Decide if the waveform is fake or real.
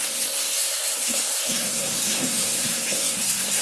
fake